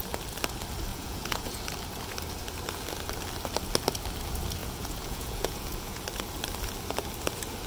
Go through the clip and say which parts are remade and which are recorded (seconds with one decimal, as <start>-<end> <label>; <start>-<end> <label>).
0.0-0.9 recorded; 0.9-1.6 remade; 1.6-4.6 recorded; 4.6-6.0 remade; 6.0-7.7 recorded